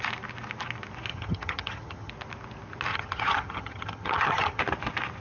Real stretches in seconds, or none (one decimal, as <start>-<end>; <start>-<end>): 0.0-1.1; 2.1-2.9; 4.6-5.2